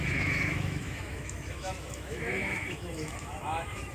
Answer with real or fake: fake